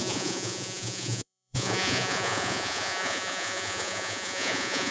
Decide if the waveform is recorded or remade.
remade